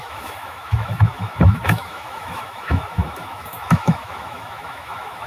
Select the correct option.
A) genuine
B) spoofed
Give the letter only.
B